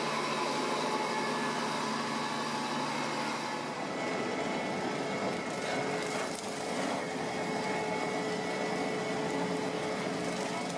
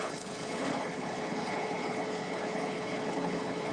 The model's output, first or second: second